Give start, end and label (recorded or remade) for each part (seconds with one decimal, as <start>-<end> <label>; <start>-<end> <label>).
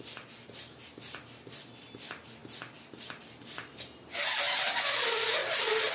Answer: 0.0-5.4 recorded; 5.4-5.9 remade